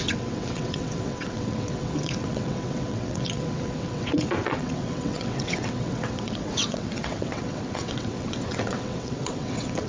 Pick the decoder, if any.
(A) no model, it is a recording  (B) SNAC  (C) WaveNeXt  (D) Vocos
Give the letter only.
C